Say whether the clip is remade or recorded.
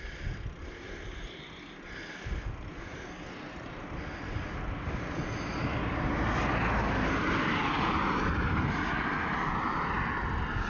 recorded